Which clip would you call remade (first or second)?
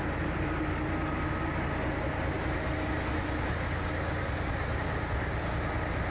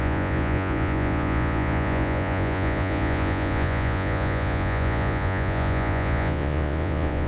second